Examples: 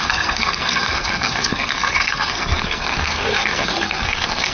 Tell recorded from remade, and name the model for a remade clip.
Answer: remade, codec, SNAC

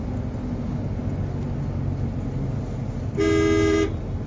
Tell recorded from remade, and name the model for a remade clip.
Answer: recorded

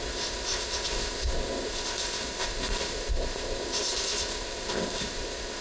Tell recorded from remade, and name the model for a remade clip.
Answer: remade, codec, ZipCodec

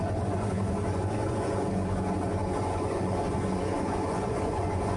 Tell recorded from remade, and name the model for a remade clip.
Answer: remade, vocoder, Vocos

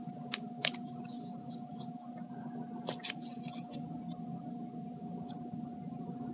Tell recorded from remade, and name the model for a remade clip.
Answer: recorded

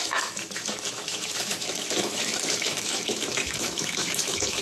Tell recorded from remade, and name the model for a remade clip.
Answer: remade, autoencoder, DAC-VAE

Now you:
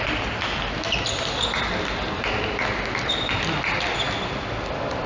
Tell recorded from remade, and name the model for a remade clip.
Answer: recorded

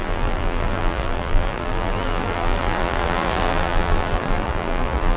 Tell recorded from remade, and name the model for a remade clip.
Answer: remade, vocoder, BigVGAN v2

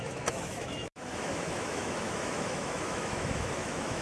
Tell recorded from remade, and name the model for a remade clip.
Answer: remade, autoencoder, DAC-VAE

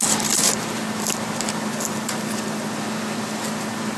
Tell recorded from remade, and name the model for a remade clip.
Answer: recorded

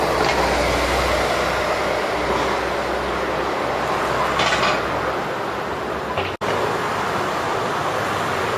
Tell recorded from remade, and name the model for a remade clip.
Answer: recorded